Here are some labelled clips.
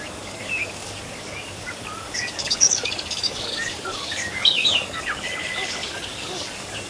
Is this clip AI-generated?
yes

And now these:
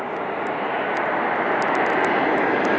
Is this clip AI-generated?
no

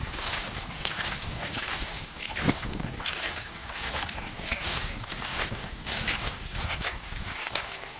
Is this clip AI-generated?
yes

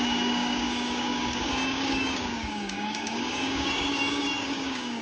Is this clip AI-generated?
yes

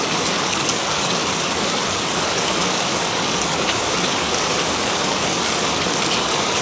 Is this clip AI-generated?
yes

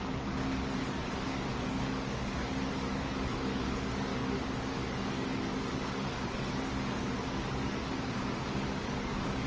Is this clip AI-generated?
yes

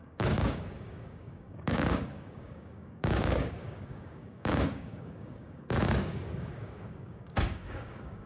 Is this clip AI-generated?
yes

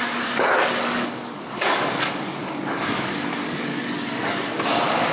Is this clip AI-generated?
yes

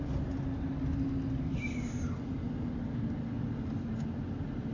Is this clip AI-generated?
no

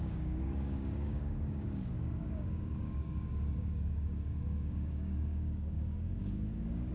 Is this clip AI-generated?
yes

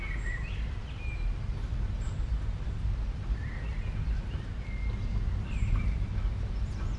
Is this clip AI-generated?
no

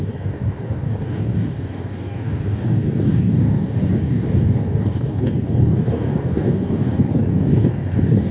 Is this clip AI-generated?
yes